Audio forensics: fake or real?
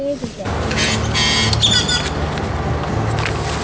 real